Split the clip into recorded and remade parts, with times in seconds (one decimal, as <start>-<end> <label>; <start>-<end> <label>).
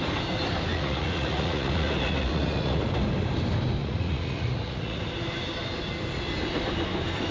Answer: 0.0-0.7 recorded; 0.7-2.9 remade; 2.9-3.8 recorded; 3.8-5.0 remade; 5.0-7.3 recorded